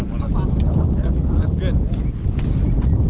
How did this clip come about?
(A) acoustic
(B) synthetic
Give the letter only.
A